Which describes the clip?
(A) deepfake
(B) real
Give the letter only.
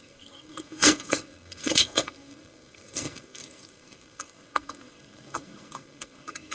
A